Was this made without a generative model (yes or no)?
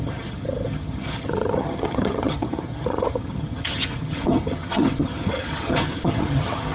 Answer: no